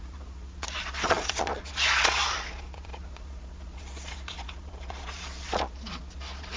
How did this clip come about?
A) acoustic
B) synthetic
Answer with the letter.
B